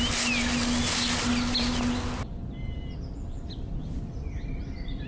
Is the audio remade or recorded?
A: recorded